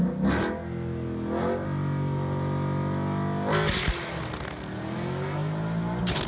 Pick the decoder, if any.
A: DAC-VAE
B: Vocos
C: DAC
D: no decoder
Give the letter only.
D